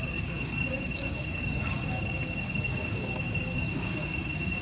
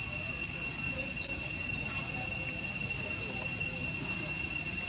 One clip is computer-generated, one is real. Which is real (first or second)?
second